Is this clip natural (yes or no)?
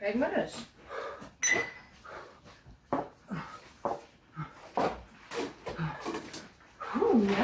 yes